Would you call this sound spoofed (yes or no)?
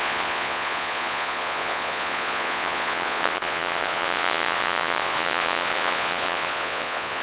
yes